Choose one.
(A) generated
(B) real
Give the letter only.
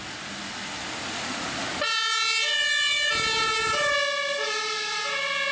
B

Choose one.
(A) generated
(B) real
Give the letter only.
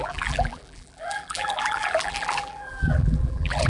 A